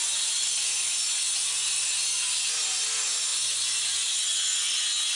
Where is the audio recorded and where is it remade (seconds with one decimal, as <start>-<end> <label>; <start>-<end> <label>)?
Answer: 0.0-5.2 recorded